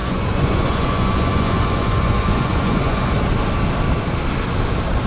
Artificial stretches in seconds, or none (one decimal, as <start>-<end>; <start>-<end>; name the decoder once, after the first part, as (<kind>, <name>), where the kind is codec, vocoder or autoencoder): 0.0-3.1 (vocoder, Vocos)